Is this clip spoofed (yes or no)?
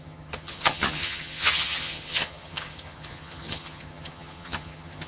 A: yes